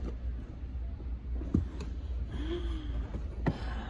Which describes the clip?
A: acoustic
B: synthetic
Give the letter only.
A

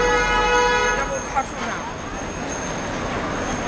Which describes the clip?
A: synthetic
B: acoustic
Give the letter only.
B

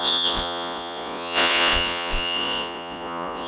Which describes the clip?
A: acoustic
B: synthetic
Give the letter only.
B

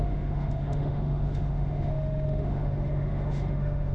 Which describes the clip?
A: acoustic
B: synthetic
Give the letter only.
B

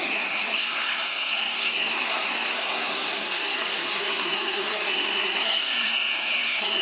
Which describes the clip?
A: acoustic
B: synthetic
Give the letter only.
B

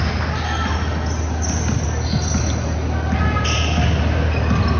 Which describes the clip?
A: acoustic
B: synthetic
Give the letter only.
A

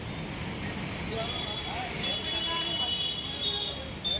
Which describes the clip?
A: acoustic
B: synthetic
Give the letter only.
A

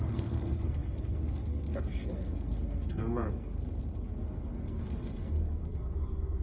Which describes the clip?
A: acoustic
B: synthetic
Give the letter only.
B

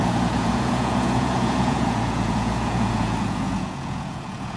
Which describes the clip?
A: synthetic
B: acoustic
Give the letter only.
A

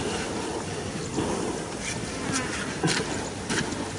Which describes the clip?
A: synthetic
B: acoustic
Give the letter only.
B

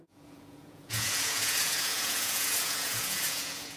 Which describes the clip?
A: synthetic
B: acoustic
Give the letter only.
A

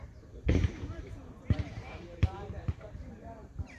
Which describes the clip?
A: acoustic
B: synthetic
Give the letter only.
B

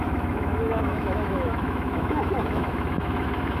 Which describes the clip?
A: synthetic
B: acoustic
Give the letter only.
A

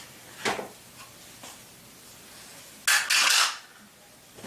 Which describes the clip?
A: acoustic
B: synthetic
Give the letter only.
A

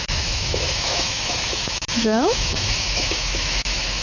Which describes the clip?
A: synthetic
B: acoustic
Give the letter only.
A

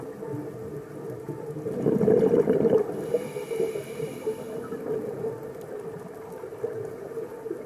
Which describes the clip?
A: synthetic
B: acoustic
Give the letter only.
B